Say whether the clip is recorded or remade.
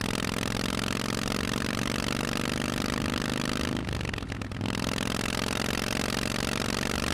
recorded